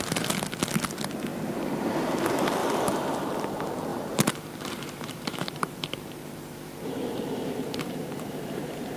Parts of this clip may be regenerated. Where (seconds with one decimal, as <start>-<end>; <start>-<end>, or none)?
1.3-1.9; 2.6-3.3; 3.9-9.0